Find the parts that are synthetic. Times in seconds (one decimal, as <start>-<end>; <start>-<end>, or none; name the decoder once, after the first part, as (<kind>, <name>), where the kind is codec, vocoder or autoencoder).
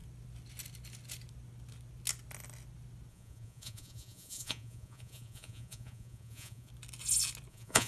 3.1-6.7 (vocoder, Vocos); 7.5-7.9